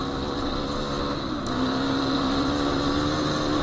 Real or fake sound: real